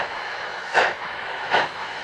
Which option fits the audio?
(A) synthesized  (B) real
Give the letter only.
A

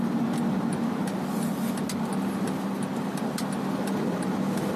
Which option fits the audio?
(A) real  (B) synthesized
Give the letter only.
A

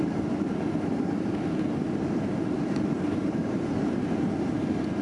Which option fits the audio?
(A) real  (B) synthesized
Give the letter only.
A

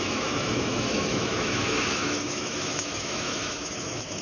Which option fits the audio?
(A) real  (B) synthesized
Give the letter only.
B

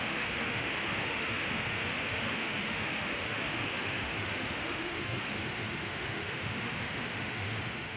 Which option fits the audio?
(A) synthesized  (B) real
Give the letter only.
A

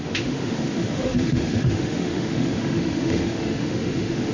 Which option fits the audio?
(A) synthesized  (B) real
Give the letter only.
A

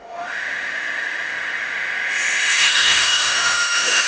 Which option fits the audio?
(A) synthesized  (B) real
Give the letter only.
A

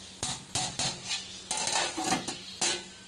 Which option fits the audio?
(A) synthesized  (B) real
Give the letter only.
B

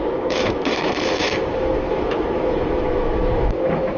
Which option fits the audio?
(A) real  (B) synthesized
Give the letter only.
B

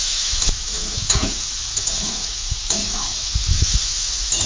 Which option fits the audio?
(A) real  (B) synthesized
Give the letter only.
B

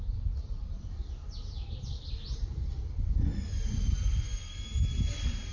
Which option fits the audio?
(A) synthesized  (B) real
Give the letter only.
B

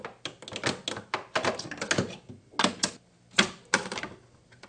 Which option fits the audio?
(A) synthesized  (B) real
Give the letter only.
B